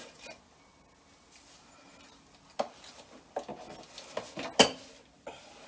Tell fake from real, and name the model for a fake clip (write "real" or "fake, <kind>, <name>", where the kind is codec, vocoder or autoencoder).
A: real